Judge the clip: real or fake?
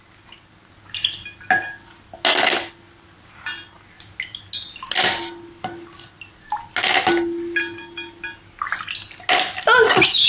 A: real